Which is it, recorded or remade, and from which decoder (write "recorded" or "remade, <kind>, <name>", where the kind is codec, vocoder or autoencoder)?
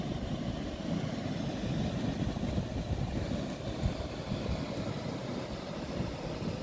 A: recorded